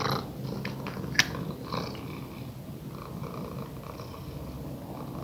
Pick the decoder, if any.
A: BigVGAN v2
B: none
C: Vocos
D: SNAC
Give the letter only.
B